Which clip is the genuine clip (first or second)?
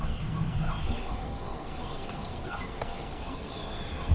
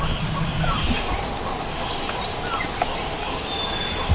second